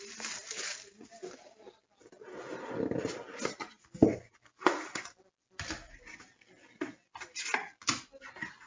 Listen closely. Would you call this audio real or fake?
real